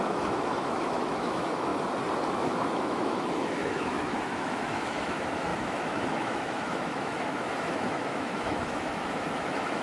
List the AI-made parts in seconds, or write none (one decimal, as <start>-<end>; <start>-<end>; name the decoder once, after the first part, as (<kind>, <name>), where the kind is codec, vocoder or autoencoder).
0.0-1.7 (autoencoder, DAC-VAE); 2.3-9.8

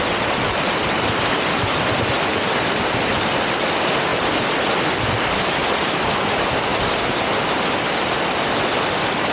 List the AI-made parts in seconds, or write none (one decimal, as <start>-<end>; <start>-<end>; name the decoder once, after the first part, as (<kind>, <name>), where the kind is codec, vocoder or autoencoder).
0.0-4.1 (vocoder, BigVGAN v2); 5.5-6.7; 7.7-9.3

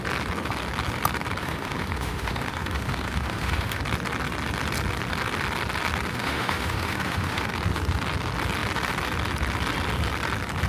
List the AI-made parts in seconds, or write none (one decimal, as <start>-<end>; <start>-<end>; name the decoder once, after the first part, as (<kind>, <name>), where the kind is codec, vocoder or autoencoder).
1.4-3.8 (autoencoder, DAC-VAE); 6.1-7.5

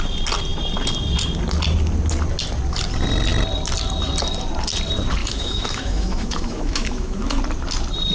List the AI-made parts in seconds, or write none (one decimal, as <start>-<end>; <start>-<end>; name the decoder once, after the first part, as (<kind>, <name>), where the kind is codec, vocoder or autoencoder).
5.2-7.4 (autoencoder, DAC-VAE)

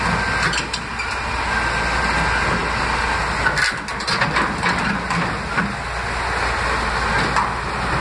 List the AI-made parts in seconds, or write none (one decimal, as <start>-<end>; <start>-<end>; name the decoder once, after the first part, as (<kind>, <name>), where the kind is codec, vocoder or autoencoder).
none

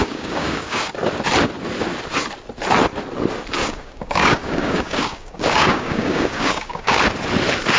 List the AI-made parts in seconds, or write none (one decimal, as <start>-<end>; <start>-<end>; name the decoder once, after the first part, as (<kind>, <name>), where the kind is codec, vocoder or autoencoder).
0.0-0.9 (codec, DAC); 3.6-7.0

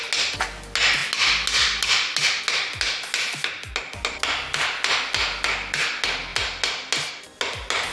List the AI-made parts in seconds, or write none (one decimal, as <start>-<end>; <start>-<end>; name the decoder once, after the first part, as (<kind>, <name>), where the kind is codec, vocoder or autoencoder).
none